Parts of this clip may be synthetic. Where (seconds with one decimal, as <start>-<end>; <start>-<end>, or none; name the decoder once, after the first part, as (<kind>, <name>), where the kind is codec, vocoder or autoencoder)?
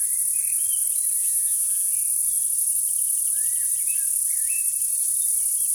1.2-1.9 (vocoder, Vocos)